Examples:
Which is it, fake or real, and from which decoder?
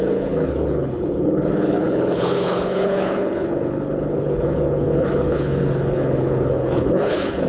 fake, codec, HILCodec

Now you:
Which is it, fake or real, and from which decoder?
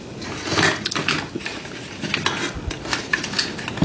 real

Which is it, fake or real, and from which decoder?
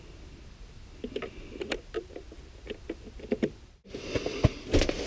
real